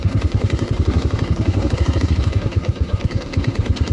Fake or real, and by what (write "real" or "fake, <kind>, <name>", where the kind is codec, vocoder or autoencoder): fake, codec, SNAC